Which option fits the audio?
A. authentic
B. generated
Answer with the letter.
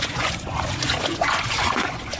B